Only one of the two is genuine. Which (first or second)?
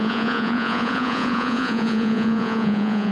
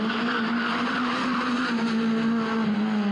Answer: second